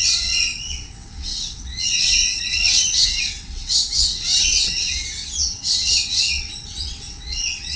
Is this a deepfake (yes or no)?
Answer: yes